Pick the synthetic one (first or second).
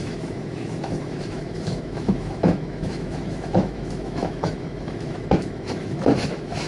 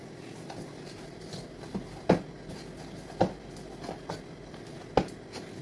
first